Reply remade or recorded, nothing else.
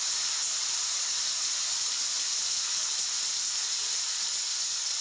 remade